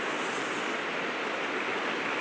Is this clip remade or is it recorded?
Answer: recorded